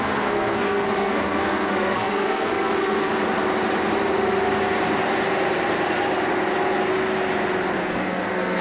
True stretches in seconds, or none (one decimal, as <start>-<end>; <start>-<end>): 3.1-7.8